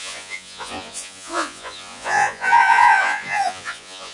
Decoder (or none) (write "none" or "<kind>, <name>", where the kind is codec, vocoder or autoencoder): vocoder, Vocos